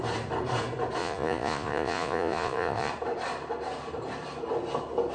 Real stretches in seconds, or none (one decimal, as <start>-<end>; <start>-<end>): 0.0-1.0; 2.9-5.1